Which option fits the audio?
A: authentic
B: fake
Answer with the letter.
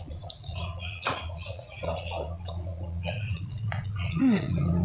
B